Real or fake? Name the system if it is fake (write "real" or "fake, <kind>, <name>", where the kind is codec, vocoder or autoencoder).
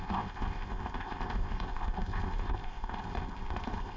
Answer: fake, codec, ZipCodec